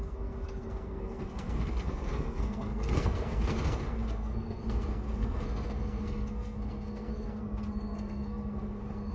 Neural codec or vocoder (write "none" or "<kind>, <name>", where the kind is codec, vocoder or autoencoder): codec, SNAC